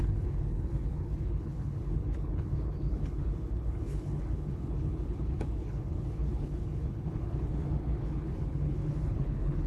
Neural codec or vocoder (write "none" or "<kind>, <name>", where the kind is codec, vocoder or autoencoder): codec, HILCodec